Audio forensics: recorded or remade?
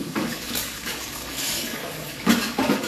remade